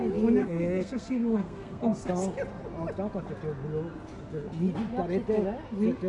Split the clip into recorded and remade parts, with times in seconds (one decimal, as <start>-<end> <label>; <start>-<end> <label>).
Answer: 0.0-0.4 recorded; 0.4-2.1 remade; 2.1-6.1 recorded